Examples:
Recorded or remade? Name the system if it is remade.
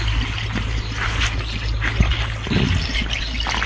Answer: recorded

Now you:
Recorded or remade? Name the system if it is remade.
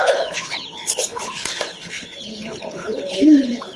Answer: remade, codec, HILCodec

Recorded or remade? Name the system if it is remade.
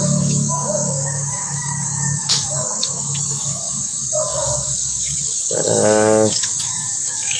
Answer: remade, codec, DAC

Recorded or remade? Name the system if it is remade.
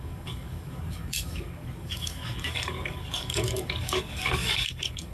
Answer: remade, codec, DAC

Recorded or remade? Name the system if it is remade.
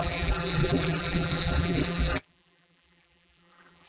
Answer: remade, vocoder, BigVGAN v2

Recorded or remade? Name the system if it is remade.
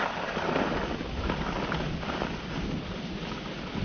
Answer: recorded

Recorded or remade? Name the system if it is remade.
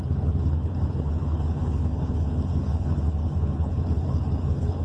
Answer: remade, codec, HILCodec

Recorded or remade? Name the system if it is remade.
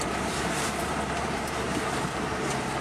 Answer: remade, vocoder, BigVGAN v2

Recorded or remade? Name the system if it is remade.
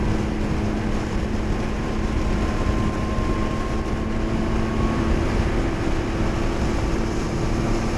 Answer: recorded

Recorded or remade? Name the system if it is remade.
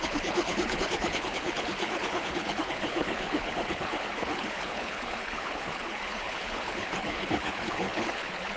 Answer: remade, codec, HILCodec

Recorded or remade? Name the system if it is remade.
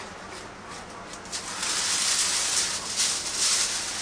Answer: recorded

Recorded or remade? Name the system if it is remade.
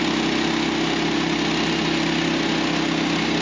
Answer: recorded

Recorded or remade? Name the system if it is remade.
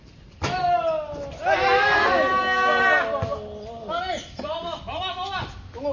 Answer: recorded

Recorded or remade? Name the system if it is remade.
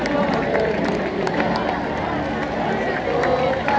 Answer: recorded